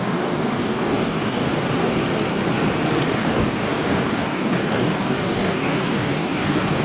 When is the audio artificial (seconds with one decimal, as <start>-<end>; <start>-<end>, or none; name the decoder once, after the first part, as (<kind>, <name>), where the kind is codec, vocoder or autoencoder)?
0.0-2.0 (codec, DAC); 3.1-6.8